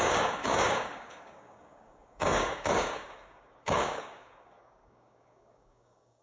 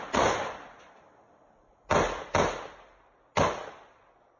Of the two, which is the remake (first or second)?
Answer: first